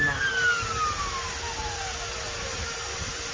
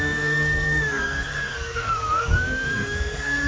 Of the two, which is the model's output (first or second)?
second